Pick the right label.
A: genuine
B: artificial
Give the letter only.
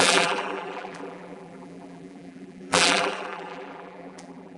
B